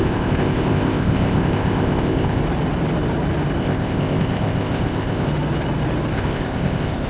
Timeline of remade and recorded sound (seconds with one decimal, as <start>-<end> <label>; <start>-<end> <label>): 0.0-2.4 remade; 2.4-3.6 recorded; 3.6-5.3 remade; 5.3-6.1 recorded; 6.1-7.1 remade